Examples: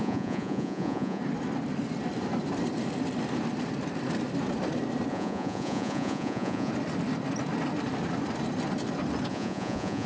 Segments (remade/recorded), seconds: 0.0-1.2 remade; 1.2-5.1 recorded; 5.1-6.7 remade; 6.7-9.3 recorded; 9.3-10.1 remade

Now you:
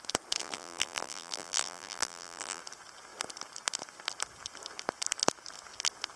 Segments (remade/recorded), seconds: 0.0-0.4 recorded; 0.4-2.6 remade; 2.6-6.2 recorded

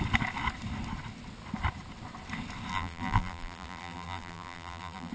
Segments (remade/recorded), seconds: 0.0-2.7 recorded; 2.7-5.1 remade

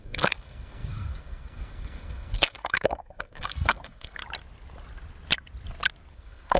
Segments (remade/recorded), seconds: 0.0-4.2 remade; 4.2-6.1 recorded; 6.1-6.6 remade

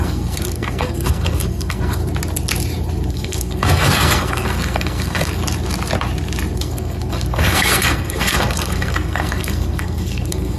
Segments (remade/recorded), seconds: 0.0-2.0 remade; 2.0-3.1 recorded; 3.1-5.4 remade; 5.4-6.6 recorded; 6.6-10.6 remade

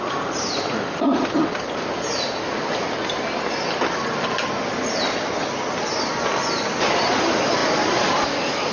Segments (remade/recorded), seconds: 0.0-8.7 recorded